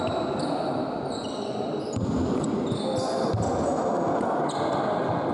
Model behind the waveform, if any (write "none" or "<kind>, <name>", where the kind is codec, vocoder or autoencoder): none